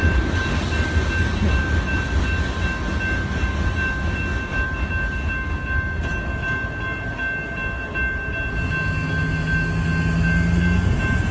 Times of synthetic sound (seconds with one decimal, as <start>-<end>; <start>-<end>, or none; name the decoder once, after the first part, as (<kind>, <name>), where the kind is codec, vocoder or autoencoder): 1.3-2.2 (vocoder, BigVGAN v2)